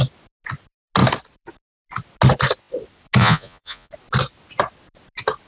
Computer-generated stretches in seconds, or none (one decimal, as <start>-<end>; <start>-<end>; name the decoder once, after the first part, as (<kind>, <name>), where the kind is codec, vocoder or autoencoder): 3.2-3.9 (vocoder, Vocos)